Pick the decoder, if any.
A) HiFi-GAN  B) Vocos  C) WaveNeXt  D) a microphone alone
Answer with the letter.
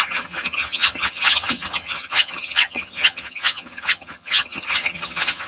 A